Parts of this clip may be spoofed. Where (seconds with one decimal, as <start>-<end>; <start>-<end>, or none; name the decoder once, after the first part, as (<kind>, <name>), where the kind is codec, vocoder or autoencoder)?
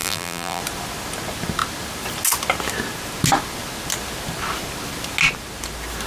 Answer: 0.0-0.6 (vocoder, BigVGAN v2)